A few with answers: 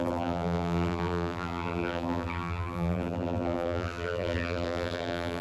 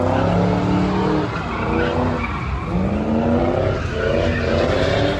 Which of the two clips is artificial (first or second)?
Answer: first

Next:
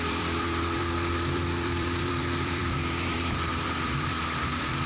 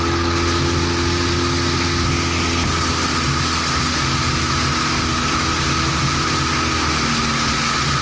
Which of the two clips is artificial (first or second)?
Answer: first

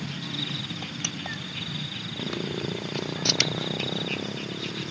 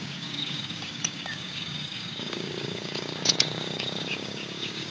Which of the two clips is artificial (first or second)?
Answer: second